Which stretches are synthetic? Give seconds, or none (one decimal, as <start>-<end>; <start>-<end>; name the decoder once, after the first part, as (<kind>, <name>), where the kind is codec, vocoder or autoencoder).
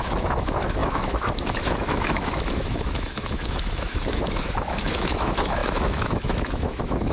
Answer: 0.0-7.1 (autoencoder, DAC-VAE)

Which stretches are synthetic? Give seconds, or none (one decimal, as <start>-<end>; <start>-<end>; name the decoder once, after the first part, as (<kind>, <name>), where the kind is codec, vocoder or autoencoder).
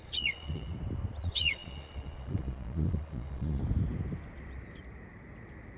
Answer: 0.0-0.7 (vocoder, Vocos); 1.2-3.6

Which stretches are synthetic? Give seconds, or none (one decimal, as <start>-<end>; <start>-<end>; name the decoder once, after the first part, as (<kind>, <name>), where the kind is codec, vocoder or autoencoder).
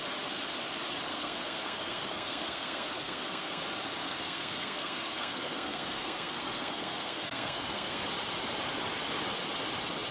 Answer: 1.1-3.6 (codec, SNAC); 4.0-8.0